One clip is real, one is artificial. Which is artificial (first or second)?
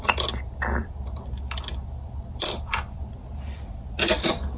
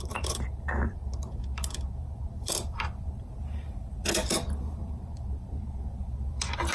second